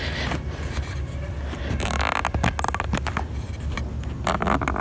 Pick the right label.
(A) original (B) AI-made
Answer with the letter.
A